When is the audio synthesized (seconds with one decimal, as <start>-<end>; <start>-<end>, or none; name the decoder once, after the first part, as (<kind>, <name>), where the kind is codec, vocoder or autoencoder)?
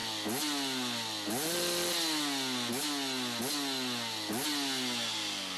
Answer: none